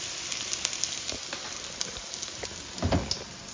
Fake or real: real